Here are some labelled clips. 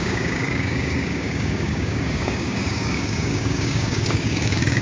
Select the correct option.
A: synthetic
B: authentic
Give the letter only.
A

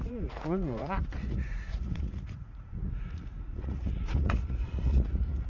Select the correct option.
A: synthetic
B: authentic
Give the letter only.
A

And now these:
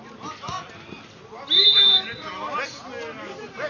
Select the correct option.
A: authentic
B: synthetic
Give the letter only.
A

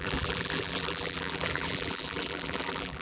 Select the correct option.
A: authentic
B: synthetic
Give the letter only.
B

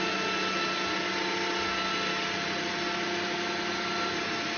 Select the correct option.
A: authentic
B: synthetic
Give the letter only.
A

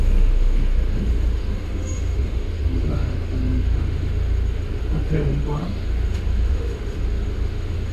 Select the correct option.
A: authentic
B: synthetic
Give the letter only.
B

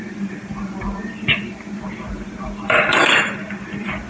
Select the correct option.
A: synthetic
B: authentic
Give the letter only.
B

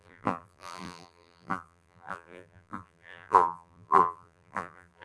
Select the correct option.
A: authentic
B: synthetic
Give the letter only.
B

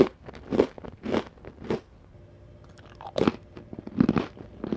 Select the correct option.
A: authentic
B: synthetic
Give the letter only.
A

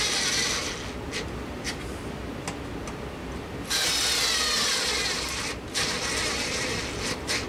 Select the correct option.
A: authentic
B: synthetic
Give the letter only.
A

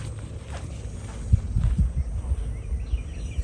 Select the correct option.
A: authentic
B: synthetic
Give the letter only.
A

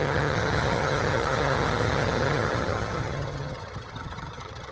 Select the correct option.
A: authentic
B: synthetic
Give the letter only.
B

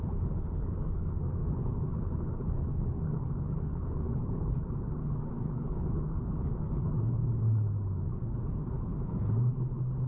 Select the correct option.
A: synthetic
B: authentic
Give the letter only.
A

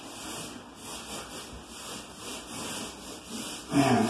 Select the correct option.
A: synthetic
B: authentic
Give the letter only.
B